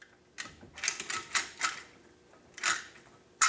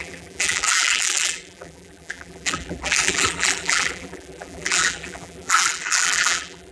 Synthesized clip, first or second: second